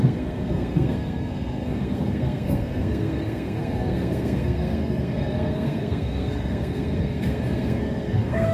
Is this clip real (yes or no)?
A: no